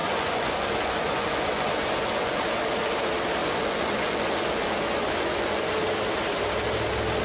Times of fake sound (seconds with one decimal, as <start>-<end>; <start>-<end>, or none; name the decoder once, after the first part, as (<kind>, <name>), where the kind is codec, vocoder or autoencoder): 0.0-2.4 (vocoder, Vocos); 3.4-5.7